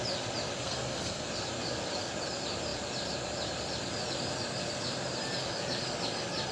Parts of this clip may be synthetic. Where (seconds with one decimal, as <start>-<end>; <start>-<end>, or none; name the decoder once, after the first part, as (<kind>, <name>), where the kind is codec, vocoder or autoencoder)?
0.6-1.3 (codec, SNAC)